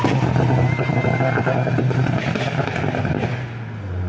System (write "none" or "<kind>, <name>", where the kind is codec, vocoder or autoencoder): none